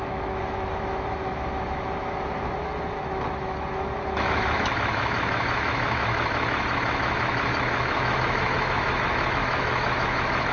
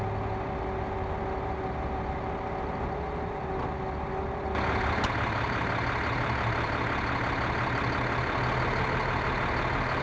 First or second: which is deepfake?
first